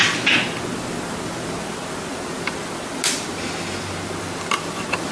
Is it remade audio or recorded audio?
recorded